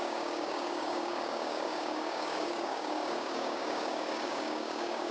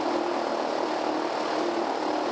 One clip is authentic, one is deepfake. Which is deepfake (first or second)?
first